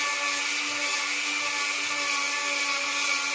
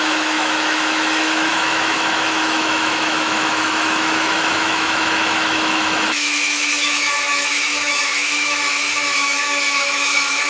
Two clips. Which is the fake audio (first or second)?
second